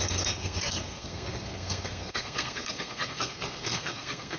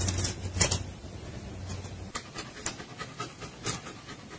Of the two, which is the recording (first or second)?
second